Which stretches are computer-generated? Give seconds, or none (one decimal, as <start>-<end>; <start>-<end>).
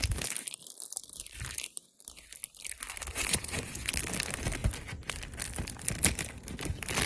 3.1-3.9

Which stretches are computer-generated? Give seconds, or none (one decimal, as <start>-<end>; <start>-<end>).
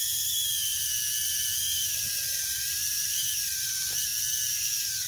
0.0-0.7; 1.6-4.1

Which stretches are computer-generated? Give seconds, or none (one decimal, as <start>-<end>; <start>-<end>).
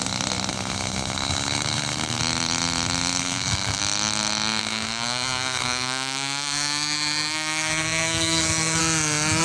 0.5-2.2; 3.2-3.8; 4.6-8.8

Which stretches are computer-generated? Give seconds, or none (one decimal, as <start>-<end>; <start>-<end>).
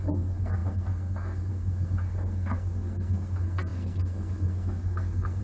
0.0-5.4